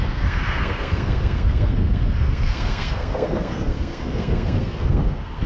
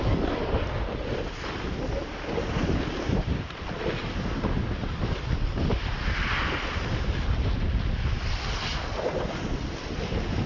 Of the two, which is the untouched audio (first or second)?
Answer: second